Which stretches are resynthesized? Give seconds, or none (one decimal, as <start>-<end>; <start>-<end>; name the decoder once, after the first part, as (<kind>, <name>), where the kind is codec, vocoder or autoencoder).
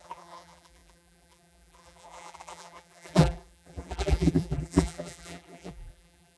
0.0-6.4 (vocoder, BigVGAN v2)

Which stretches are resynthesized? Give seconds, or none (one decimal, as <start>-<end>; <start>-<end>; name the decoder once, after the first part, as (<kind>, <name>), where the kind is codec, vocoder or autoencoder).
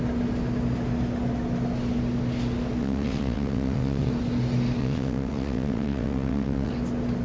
2.8-4.1 (vocoder, WaveNeXt); 4.8-6.7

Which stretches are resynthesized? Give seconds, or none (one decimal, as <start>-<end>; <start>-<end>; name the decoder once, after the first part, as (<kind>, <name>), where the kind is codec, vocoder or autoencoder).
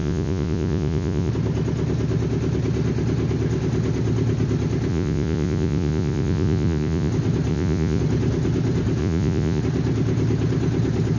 0.0-1.3 (vocoder, Vocos); 4.9-7.1; 7.5-8.0; 9.0-9.6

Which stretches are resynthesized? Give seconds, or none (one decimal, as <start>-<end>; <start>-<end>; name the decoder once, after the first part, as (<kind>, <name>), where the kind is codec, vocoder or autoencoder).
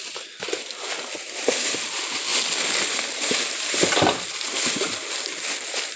none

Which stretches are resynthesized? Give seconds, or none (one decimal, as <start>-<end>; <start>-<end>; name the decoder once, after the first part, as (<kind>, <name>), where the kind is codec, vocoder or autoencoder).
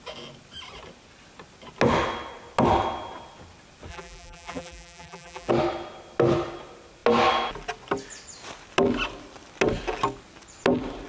3.9-5.5 (vocoder, BigVGAN v2)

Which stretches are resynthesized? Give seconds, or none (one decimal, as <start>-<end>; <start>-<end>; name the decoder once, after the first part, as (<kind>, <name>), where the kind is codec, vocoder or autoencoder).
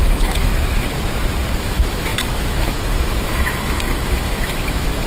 0.0-0.5 (autoencoder, DAC-VAE); 1.6-5.1